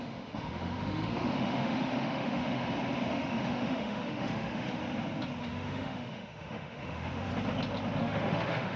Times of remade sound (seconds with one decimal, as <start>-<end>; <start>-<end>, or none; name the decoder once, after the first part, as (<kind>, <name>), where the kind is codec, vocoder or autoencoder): 0.0-2.6 (autoencoder, DAC-VAE); 3.1-4.8; 5.4-7.3; 8.0-8.8